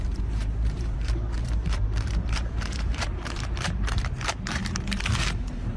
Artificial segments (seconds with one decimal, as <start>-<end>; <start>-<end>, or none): 0.0-5.8